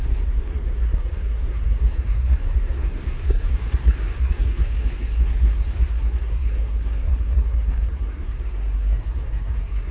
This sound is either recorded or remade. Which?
remade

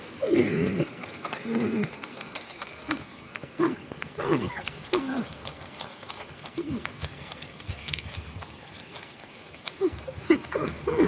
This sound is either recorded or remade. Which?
remade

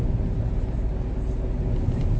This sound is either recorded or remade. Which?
recorded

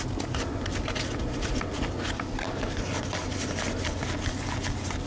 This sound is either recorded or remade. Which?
recorded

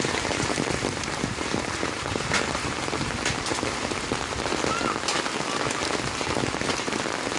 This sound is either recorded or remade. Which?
recorded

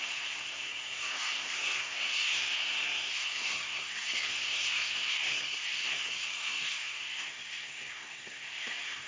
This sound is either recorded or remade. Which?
remade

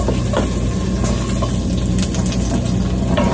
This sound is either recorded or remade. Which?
recorded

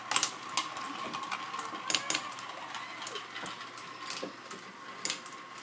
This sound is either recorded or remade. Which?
recorded